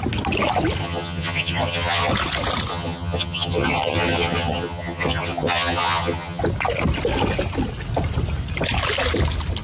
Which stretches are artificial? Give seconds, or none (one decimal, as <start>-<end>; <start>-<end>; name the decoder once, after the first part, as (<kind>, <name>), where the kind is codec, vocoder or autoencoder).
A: 0.8-2.1 (vocoder, HiFi-GAN); 2.7-6.4